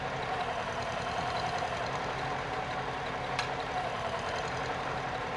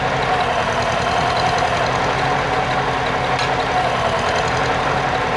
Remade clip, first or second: first